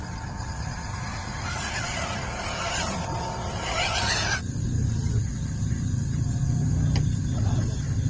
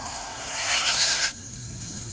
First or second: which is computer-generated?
second